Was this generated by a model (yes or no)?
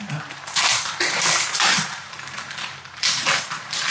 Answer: yes